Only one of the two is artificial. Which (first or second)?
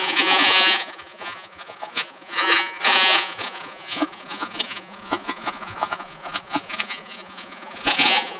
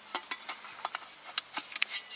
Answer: first